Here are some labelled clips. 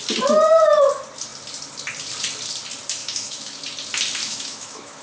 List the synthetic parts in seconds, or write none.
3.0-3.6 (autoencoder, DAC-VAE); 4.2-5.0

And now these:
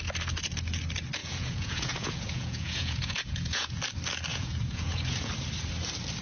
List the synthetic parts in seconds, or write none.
1.2-3.8 (vocoder, Vocos); 4.3-5.3